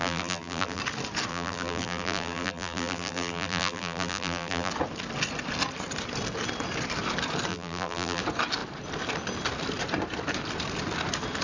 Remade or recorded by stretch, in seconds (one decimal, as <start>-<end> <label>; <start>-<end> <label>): 0.0-0.8 remade; 0.8-1.3 recorded; 1.3-4.7 remade; 4.7-7.5 recorded; 7.5-8.2 remade; 8.2-11.4 recorded